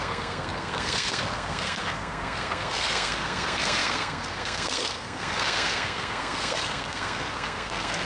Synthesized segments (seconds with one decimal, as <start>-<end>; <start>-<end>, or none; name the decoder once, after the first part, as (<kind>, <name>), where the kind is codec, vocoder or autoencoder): 0.0-8.1 (codec, SNAC)